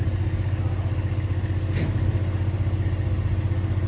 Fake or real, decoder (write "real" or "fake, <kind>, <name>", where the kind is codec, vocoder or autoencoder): real